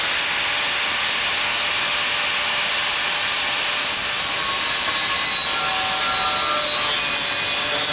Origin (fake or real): real